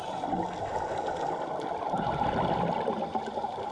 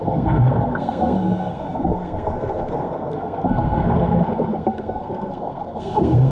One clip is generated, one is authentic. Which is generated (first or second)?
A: second